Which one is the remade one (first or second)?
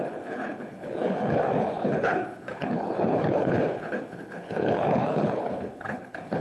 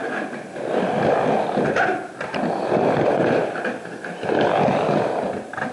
first